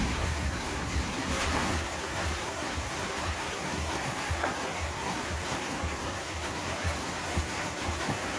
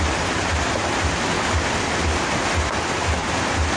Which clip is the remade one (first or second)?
first